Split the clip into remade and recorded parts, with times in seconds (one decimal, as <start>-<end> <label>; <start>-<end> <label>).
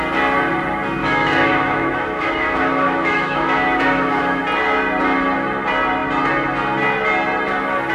0.0-1.0 recorded; 1.0-4.4 remade; 4.4-7.9 recorded